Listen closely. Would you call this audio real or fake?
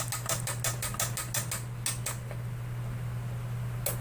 real